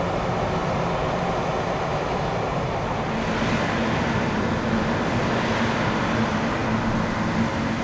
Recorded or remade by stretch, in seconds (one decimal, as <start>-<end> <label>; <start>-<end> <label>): 0.0-7.8 recorded